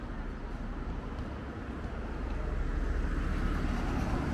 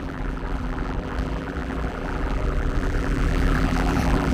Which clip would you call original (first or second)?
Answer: first